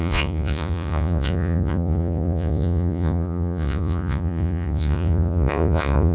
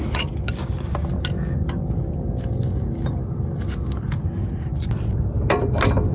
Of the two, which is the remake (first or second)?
first